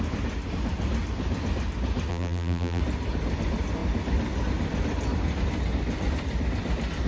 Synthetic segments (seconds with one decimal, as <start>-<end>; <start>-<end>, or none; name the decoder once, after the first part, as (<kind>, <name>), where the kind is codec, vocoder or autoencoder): 2.1-2.8 (vocoder, BigVGAN v2)